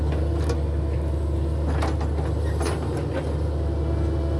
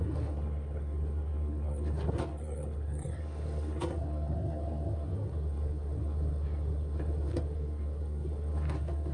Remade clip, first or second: second